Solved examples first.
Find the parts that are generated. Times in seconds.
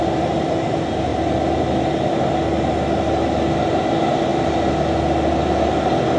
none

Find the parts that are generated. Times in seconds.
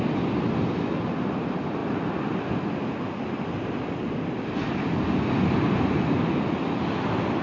none